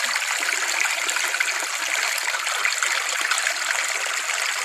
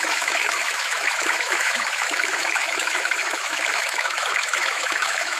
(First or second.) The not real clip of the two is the second